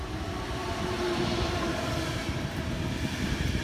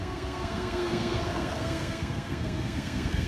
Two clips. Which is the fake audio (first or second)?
second